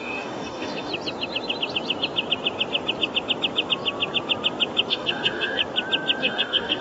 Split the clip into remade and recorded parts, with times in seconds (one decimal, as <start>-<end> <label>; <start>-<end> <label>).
0.0-0.9 remade; 0.9-4.9 recorded; 4.9-5.6 remade; 5.6-6.2 recorded; 6.2-6.8 remade